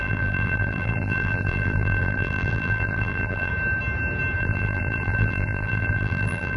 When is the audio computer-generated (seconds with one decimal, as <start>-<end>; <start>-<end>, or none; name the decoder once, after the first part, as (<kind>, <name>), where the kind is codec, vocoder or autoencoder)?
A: 0.0-3.5 (vocoder, BigVGAN v2); 4.4-6.6